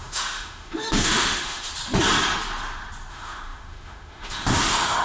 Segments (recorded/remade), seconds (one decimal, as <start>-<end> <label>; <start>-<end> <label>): 0.0-1.7 remade; 1.7-3.1 recorded; 3.1-5.0 remade